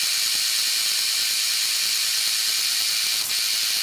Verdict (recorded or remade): recorded